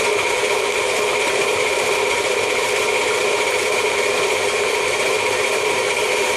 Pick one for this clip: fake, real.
fake